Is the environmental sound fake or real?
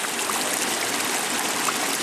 real